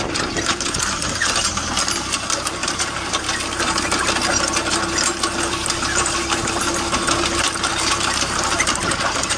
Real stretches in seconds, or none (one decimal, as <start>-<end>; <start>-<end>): 0.0-2.6; 3.1-7.7

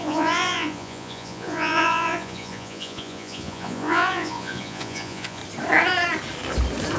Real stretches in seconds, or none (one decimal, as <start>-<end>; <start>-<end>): 5.4-7.0

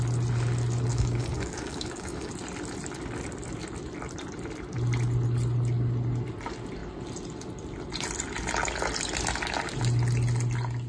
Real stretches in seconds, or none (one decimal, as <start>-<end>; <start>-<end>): 0.0-0.9; 2.3-10.9

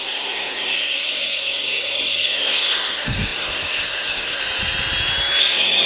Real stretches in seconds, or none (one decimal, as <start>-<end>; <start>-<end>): 4.4-5.4

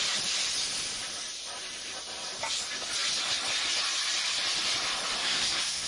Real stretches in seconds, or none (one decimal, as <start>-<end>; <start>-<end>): 0.0-5.2